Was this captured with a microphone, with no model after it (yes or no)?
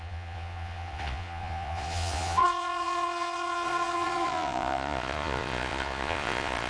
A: no